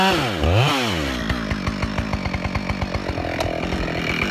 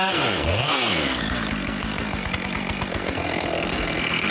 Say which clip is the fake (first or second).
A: second